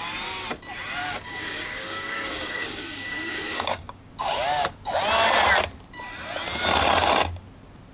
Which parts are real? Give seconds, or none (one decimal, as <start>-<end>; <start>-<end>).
0.0-1.0; 4.1-7.9